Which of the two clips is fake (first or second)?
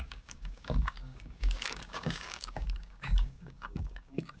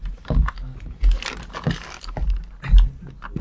first